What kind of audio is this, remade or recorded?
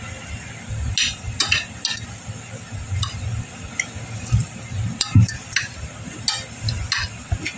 recorded